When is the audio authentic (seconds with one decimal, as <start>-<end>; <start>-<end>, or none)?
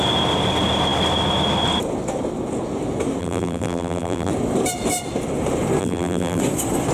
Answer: 0.0-3.2; 4.3-5.8; 6.4-6.9